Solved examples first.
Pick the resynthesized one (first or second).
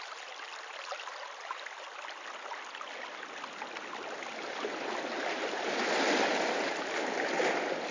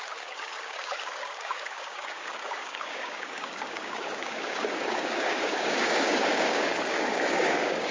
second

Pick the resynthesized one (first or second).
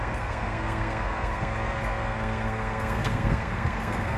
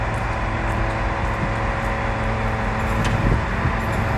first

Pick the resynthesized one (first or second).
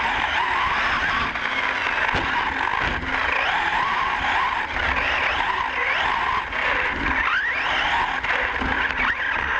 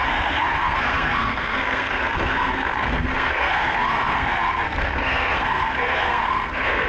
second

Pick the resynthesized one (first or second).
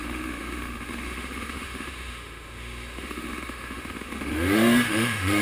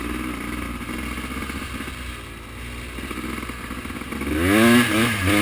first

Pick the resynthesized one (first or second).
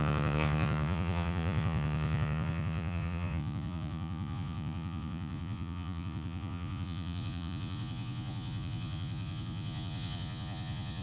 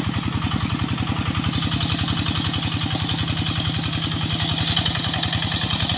first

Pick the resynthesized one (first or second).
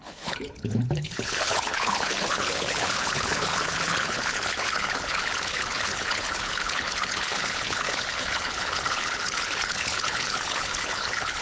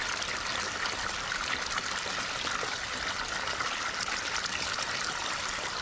first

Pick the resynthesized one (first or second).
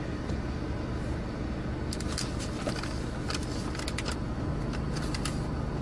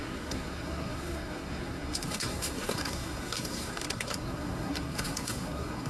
second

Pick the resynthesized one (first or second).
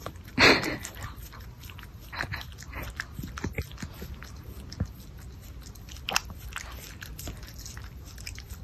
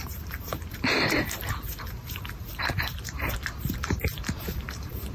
second